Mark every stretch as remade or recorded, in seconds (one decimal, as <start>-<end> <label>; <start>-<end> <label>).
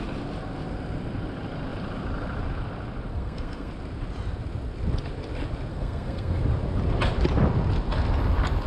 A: 0.0-3.1 recorded; 3.1-3.7 remade; 3.7-5.7 recorded; 5.7-6.4 remade; 6.4-8.7 recorded